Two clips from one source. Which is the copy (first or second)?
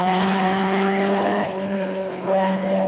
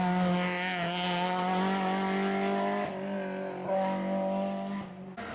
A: first